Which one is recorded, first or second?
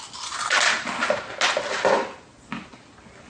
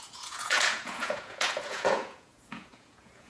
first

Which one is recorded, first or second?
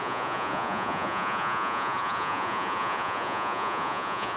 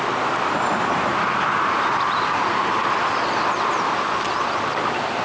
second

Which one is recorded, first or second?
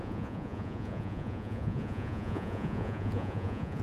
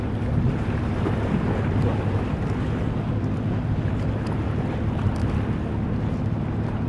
second